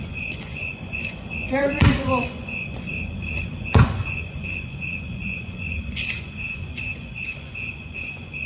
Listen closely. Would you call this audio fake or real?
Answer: fake